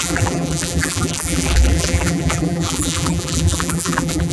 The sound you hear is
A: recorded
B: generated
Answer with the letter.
B